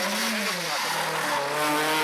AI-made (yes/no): no